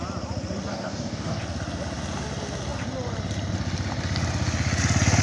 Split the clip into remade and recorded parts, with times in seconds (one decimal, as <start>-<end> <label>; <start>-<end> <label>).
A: 0.0-0.7 recorded; 0.7-1.4 remade; 1.4-5.2 recorded